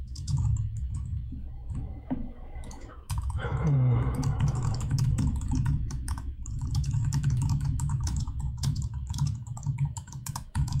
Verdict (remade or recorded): remade